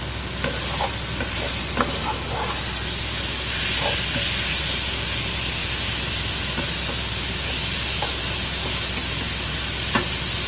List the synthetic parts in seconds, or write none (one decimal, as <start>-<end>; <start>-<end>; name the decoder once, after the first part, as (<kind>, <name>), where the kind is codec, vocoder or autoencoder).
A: none